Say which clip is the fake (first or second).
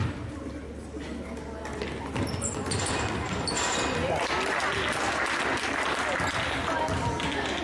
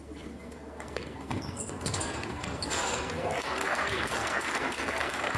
second